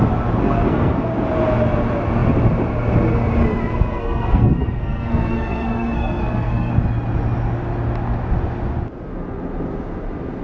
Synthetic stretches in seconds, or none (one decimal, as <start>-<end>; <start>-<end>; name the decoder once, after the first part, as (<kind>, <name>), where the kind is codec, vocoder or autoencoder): 0.4-1.1 (codec, SNAC); 3.6-6.7